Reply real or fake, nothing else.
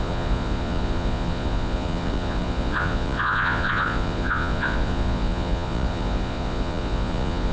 fake